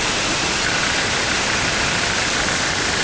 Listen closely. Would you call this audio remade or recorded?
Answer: remade